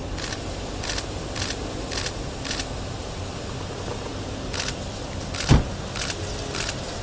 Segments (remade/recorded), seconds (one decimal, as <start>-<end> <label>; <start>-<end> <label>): 0.0-7.0 recorded